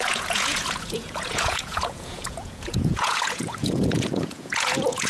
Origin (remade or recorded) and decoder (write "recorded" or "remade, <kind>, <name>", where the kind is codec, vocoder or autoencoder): remade, vocoder, Vocos